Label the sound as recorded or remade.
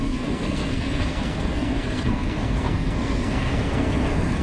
remade